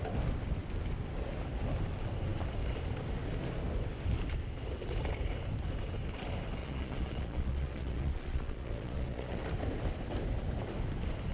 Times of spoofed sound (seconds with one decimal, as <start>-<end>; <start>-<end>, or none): 6.6-9.4